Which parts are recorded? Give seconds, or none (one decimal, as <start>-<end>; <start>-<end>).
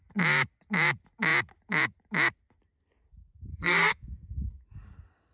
0.0-3.5; 4.6-5.3